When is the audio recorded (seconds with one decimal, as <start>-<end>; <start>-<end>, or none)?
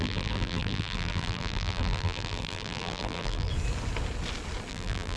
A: 3.5-4.7